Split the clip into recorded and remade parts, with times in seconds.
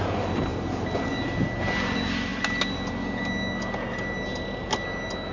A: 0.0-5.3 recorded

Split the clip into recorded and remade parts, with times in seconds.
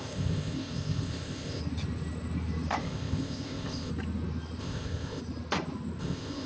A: 0.0-1.6 remade; 1.6-2.8 recorded; 2.8-3.9 remade; 3.9-4.6 recorded; 4.6-5.2 remade; 5.2-6.0 recorded; 6.0-6.5 remade